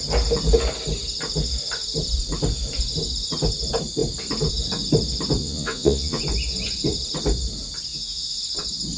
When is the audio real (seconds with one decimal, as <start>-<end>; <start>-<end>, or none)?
0.0-5.4; 6.2-7.9; 8.4-9.0